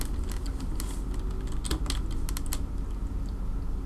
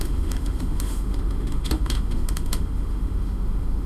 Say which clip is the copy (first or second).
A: second